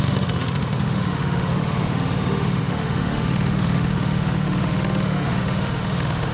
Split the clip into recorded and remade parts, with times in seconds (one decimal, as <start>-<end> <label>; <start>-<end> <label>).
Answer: 0.0-6.3 remade